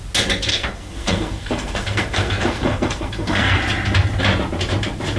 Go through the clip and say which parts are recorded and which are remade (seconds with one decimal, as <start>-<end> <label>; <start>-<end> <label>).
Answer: 0.0-0.5 recorded; 0.5-3.6 remade; 3.6-5.2 recorded